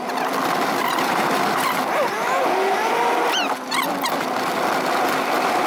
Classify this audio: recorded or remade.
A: recorded